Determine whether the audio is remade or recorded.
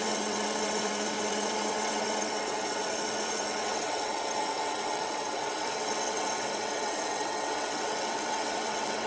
remade